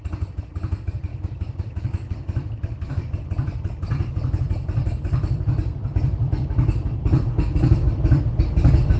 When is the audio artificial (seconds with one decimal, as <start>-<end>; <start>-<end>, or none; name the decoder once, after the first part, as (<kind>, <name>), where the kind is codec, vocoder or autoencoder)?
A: 1.1-2.9 (autoencoder, DAC-VAE)